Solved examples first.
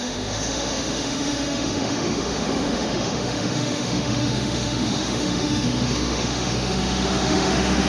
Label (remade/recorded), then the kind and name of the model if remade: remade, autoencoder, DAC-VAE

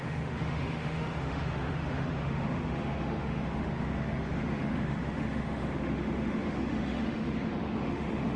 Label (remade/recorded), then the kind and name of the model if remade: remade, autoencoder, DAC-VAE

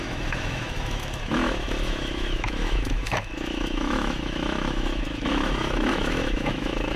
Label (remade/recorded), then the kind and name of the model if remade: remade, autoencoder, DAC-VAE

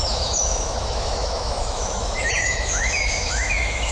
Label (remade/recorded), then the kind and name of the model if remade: remade, autoencoder, DAC-VAE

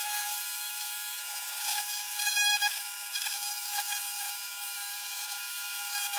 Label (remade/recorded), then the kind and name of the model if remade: remade, autoencoder, DAC-VAE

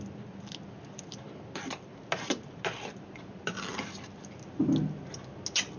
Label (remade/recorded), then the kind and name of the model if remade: recorded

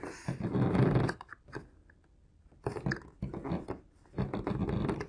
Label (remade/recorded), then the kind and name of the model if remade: recorded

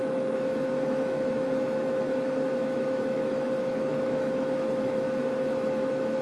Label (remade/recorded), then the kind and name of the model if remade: remade, autoencoder, DAC-VAE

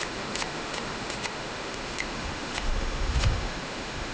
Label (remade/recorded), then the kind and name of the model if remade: remade, autoencoder, DAC-VAE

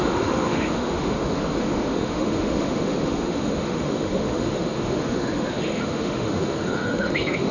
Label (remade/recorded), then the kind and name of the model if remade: remade, autoencoder, DAC-VAE